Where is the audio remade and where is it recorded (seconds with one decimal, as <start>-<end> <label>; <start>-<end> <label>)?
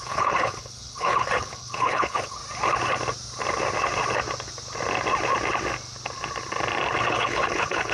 0.0-2.4 remade; 2.4-7.1 recorded; 7.1-7.9 remade